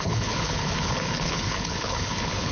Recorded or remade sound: remade